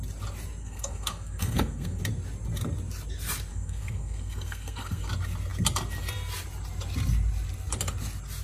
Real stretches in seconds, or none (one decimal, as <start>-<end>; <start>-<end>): 0.0-0.6; 2.0-3.5; 5.1-8.4